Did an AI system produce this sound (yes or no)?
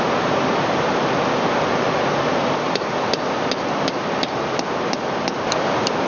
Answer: no